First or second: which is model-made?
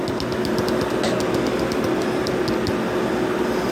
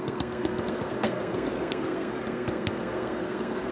second